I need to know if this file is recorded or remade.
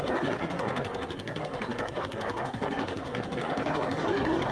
remade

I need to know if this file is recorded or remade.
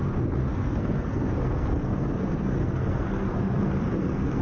remade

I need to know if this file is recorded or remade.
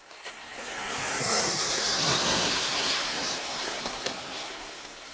remade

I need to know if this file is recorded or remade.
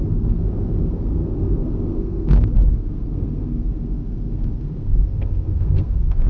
remade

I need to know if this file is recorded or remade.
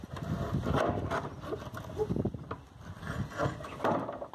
recorded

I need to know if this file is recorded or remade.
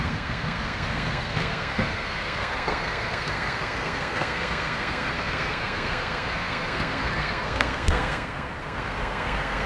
remade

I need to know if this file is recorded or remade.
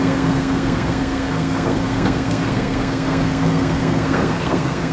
remade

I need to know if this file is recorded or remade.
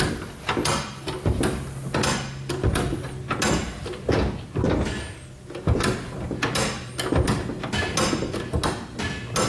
recorded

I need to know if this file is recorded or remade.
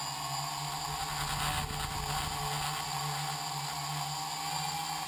recorded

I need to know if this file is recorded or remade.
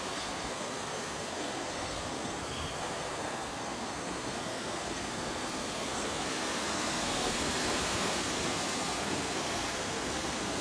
remade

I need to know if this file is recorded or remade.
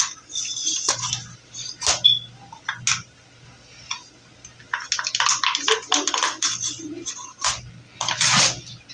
recorded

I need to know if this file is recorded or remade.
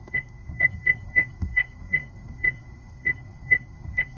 remade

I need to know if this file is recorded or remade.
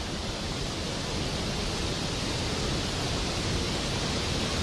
recorded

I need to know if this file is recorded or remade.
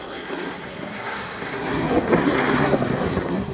remade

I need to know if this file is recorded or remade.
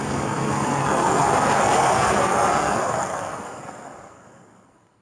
remade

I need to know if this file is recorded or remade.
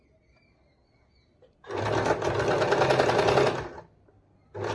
recorded